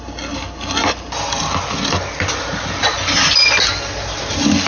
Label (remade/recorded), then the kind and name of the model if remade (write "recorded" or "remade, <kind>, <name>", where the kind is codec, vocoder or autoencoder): recorded